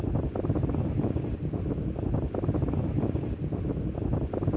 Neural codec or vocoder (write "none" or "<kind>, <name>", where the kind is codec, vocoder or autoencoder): none